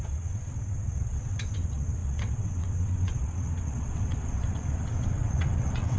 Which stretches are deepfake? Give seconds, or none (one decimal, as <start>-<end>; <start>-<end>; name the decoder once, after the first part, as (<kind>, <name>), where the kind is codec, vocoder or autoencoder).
0.0-6.0 (vocoder, WaveNeXt)